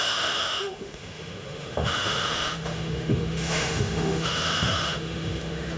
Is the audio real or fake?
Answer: fake